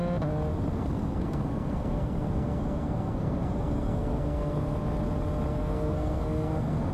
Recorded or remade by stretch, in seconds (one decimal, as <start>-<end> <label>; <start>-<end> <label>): 0.0-0.7 recorded; 0.7-4.8 remade; 4.8-5.5 recorded; 5.5-6.9 remade